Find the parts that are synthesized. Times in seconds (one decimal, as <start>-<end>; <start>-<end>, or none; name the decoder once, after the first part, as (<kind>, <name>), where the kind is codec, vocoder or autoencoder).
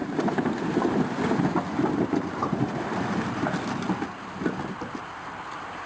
0.0-1.2 (vocoder, BigVGAN v2); 2.4-3.6